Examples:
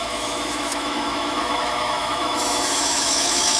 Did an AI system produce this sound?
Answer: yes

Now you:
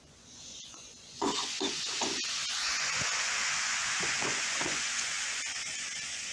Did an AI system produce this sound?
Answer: yes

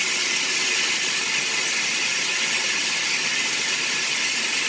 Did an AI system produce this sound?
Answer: no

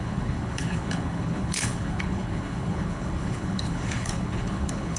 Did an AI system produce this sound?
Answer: yes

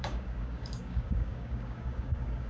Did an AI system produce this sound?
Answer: yes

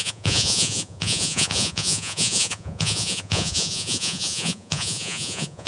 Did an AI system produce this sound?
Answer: yes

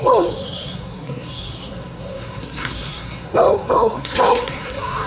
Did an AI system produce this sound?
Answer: yes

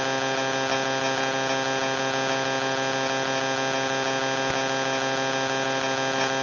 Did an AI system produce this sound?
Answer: no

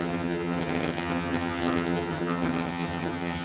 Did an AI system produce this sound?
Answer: yes